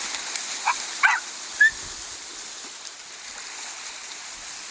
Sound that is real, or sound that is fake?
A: real